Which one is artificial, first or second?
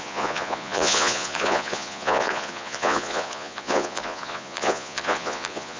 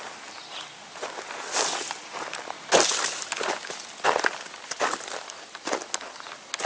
first